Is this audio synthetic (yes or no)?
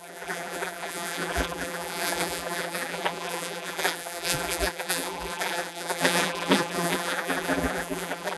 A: yes